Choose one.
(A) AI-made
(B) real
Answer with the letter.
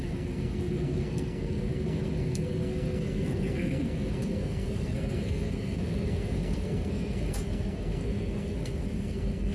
A